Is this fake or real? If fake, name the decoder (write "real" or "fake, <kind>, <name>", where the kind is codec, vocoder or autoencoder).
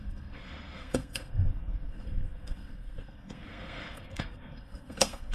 fake, codec, SNAC